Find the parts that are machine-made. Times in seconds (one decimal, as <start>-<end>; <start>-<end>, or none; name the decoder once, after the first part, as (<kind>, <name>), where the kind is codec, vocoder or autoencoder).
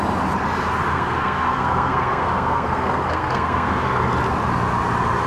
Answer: 0.8-4.0 (codec, SNAC)